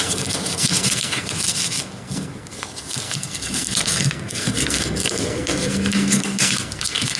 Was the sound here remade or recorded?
remade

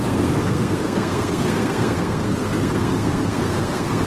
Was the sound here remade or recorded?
remade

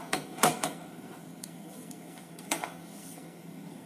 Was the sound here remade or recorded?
remade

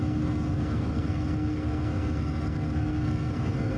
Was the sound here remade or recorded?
remade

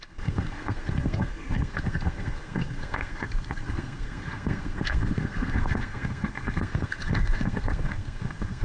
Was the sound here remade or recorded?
remade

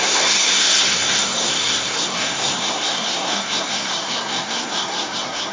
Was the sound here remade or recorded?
remade